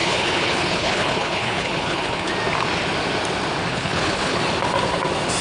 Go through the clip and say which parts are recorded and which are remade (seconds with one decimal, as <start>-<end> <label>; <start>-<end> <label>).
0.0-2.3 remade; 2.3-3.7 recorded; 3.7-4.4 remade; 4.4-5.4 recorded